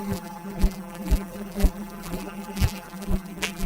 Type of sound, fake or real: fake